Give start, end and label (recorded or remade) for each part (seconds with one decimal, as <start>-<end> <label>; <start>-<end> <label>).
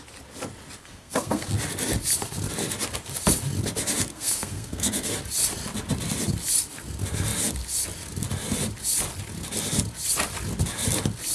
0.0-0.8 recorded; 0.8-1.5 remade; 1.5-4.1 recorded; 4.1-5.1 remade; 5.1-11.3 recorded